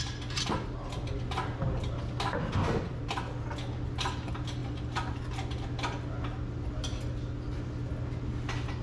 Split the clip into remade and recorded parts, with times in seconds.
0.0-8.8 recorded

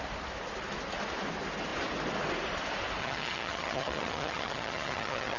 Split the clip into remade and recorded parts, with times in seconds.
0.0-3.0 recorded; 3.0-5.4 remade

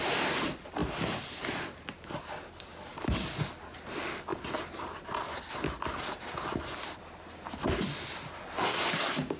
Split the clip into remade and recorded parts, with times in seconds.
0.0-8.7 recorded; 8.7-9.4 remade

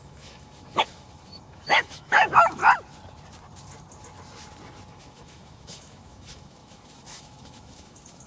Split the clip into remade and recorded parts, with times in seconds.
0.0-2.6 remade; 2.6-4.9 recorded; 4.9-8.3 remade

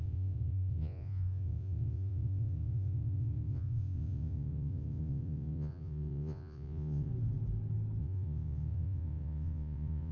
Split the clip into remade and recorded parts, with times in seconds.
0.0-7.1 remade; 7.1-8.0 recorded; 8.0-10.1 remade

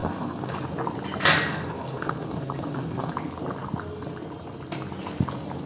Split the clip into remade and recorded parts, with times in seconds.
0.0-0.5 remade; 0.5-1.5 recorded; 1.5-3.1 remade; 3.1-5.7 recorded

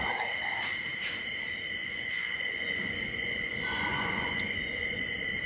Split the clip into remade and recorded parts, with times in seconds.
0.0-1.8 recorded; 1.8-5.1 remade; 5.1-5.5 recorded